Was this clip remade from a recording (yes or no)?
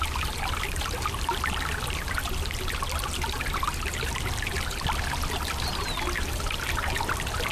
no